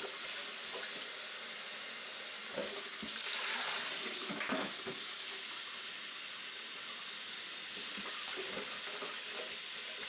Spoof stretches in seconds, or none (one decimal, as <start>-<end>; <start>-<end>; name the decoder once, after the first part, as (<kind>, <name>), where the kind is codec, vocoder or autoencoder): 4.2-4.7 (autoencoder, DAC-VAE)